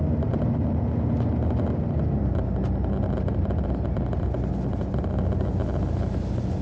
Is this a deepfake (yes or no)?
no